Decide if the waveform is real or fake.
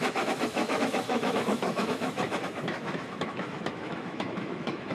fake